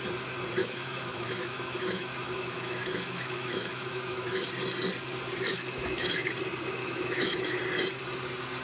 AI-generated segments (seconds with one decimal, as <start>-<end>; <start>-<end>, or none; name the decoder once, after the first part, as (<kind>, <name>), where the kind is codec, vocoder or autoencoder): 0.6-4.5 (autoencoder, DAC-VAE); 5.5-6.3; 6.8-7.6